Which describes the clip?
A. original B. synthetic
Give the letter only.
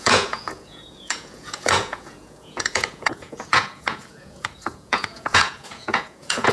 B